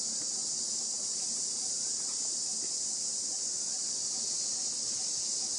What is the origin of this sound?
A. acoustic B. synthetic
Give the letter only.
A